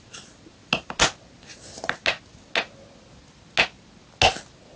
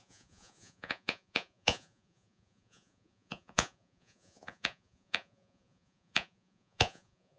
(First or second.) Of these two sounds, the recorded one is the first